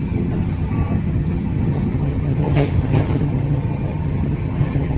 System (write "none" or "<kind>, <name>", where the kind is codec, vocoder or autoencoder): vocoder, HiFi-GAN